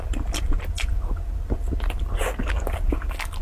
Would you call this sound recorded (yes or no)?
yes